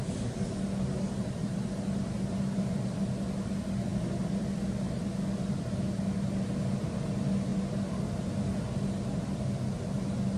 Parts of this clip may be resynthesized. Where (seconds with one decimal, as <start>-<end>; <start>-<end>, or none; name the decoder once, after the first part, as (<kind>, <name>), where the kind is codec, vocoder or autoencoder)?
none